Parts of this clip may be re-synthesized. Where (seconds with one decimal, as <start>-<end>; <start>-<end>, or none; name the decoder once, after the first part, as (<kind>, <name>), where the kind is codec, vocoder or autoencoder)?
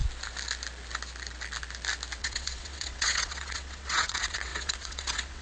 2.2-5.4 (vocoder, WaveNeXt)